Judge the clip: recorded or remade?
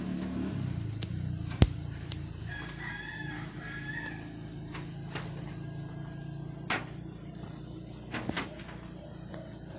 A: recorded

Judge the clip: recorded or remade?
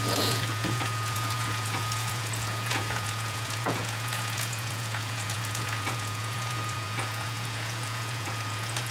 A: remade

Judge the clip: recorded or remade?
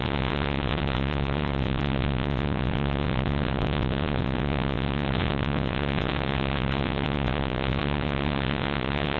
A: remade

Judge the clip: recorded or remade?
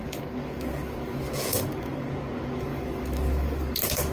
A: remade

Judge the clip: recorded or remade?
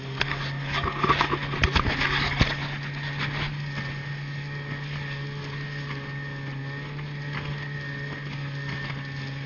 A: recorded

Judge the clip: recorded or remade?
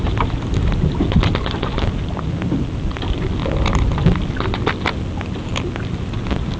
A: recorded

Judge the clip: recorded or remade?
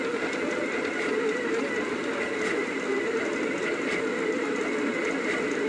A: recorded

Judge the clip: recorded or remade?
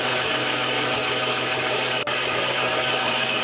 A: remade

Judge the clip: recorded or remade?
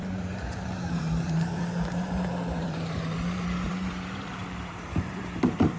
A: remade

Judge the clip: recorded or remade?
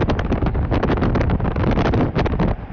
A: recorded